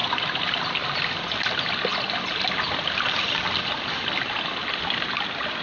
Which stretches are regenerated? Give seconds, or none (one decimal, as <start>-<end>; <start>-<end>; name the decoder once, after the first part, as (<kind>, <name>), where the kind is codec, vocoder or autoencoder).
0.0-0.7 (vocoder, BigVGAN v2)